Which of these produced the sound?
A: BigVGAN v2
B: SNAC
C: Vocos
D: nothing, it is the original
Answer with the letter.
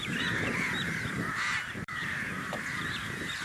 A